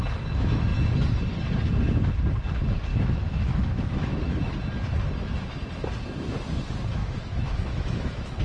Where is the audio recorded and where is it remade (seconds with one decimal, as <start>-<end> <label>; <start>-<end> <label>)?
0.0-2.9 recorded; 2.9-4.4 remade; 4.4-7.0 recorded; 7.0-8.4 remade